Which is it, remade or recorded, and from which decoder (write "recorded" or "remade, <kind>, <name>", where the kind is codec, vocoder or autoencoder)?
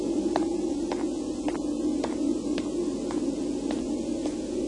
recorded